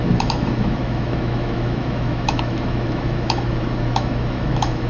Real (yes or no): no